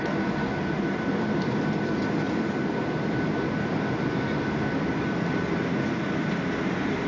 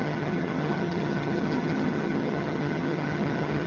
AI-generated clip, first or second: second